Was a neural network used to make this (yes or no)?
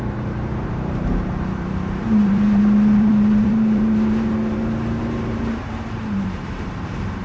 yes